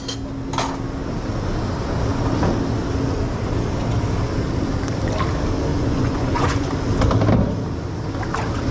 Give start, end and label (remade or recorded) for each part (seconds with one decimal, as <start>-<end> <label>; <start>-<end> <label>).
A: 0.0-5.7 recorded; 5.7-6.7 remade; 6.7-8.7 recorded